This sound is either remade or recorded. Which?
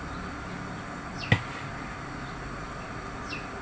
recorded